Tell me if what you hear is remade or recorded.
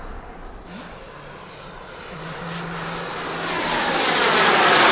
recorded